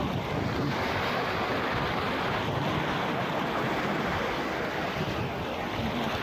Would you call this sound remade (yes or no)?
no